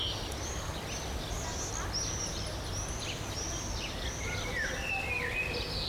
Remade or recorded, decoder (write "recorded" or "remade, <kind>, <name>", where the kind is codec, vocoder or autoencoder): recorded